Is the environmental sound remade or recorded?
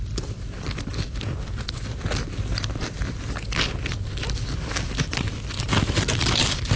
recorded